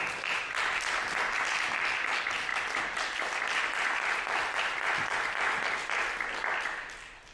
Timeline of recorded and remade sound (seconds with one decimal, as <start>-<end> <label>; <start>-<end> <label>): 0.0-7.3 recorded